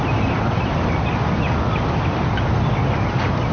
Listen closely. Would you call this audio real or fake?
real